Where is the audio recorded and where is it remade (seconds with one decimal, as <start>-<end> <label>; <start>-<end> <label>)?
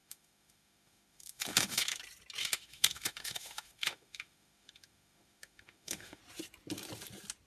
0.0-2.0 remade; 2.0-2.4 recorded; 2.4-6.2 remade; 6.2-7.5 recorded